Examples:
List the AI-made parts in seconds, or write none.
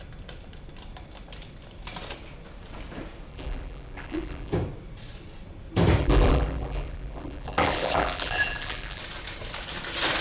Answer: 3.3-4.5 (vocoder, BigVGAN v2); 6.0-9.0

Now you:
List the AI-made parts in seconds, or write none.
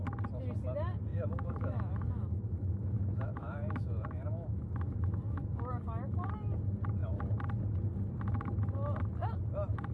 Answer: 1.1-5.7 (autoencoder, DAC-VAE)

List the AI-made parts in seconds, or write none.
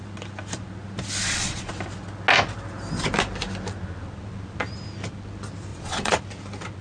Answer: 1.2-1.7 (vocoder, Vocos); 5.7-6.2